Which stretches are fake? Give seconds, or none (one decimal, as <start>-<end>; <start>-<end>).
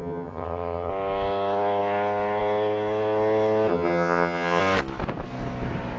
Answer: 0.0-0.9; 3.7-4.6